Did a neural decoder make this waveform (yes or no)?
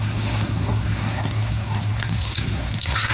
yes